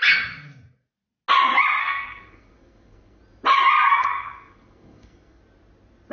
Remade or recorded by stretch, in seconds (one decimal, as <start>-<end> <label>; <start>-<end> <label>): 0.0-1.8 recorded; 1.8-3.2 remade; 3.2-3.9 recorded; 3.9-5.4 remade; 5.4-6.1 recorded